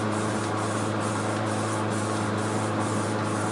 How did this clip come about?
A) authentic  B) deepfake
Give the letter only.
B